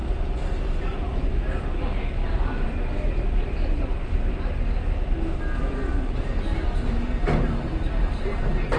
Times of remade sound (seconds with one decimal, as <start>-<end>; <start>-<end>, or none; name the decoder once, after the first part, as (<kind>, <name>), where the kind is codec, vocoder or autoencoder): none